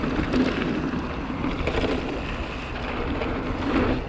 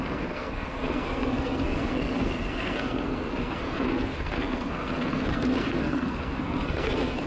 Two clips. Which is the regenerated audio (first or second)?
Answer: second